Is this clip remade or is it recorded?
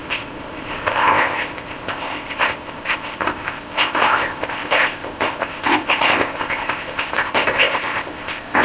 remade